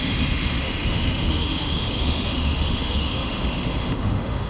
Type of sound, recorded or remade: remade